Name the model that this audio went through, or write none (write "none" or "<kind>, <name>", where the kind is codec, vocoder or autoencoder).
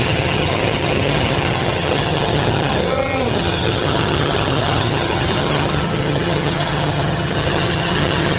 vocoder, HiFi-GAN